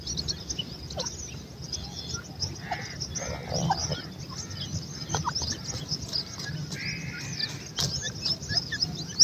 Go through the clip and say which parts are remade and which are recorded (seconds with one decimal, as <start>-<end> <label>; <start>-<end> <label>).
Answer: 0.0-9.2 recorded